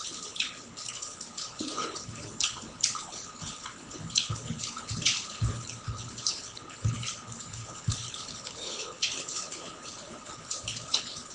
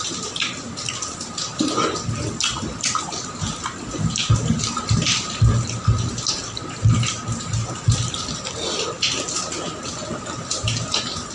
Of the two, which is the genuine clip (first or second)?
second